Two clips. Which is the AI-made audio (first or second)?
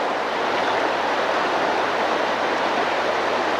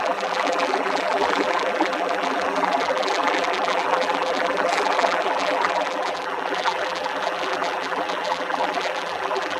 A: second